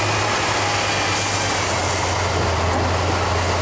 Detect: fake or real real